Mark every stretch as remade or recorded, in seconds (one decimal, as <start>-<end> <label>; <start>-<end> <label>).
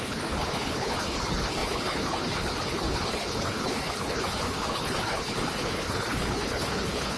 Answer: 0.0-7.2 remade